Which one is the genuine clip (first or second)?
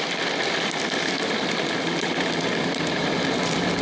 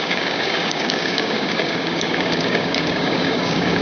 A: first